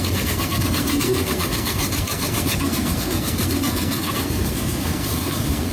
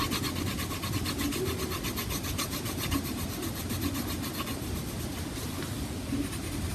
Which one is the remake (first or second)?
first